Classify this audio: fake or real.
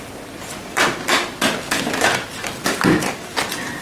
real